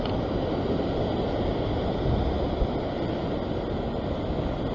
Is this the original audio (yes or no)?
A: yes